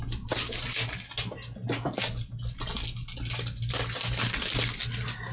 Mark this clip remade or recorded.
recorded